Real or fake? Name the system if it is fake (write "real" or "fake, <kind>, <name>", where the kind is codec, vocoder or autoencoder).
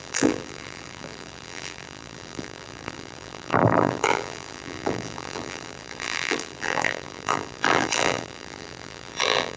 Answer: fake, vocoder, BigVGAN v2